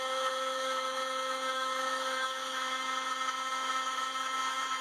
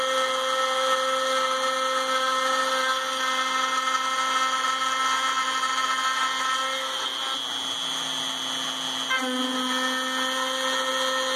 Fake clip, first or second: first